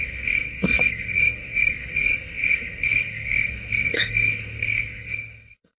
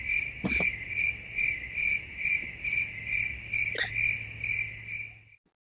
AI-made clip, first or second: first